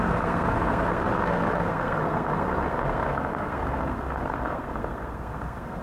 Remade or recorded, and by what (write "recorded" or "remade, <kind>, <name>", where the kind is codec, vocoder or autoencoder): remade, codec, SNAC